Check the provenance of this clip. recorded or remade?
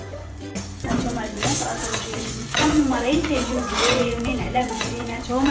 remade